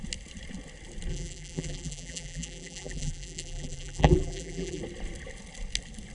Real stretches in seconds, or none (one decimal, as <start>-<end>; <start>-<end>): 0.0-1.1; 4.8-6.1

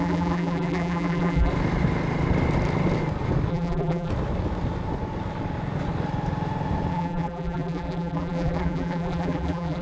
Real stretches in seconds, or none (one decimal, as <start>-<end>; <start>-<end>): 1.5-3.5; 4.1-6.9